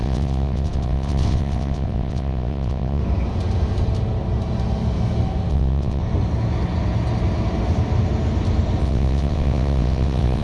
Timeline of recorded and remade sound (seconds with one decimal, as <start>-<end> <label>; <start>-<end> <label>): 0.0-3.0 remade; 3.0-5.5 recorded; 5.5-6.0 remade; 6.0-8.8 recorded; 8.8-10.4 remade